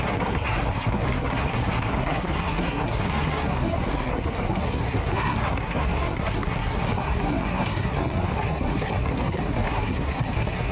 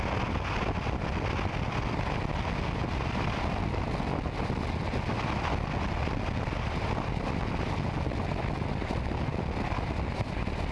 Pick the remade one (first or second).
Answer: first